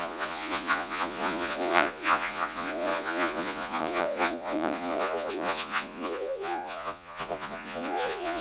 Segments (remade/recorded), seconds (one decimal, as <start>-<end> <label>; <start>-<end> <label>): 0.0-8.4 remade